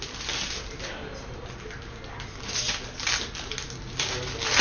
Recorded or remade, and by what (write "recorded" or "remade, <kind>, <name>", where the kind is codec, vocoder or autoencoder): recorded